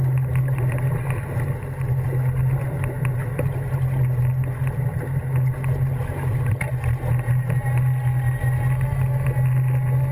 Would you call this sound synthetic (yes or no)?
no